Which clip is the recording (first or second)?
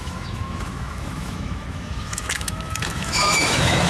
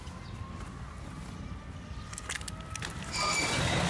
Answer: second